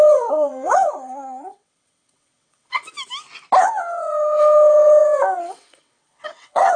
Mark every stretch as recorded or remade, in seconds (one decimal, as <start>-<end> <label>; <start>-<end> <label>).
0.0-2.8 remade; 2.8-3.6 recorded; 3.6-6.8 remade